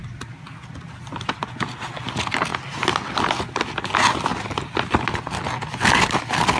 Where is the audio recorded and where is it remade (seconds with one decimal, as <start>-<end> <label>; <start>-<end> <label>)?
0.0-6.6 recorded